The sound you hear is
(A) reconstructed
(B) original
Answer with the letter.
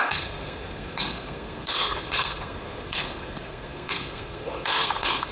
A